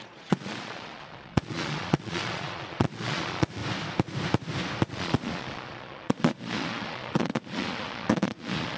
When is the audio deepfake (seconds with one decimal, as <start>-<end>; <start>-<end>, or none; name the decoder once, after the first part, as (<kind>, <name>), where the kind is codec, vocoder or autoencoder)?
0.0-3.6 (vocoder, Vocos); 4.9-8.8